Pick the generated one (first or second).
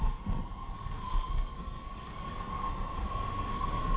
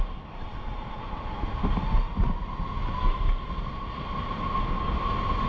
first